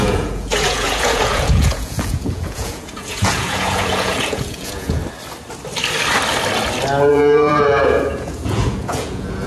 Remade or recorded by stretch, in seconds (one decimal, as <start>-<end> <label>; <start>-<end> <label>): 0.0-5.0 remade; 5.0-7.1 recorded; 7.1-9.5 remade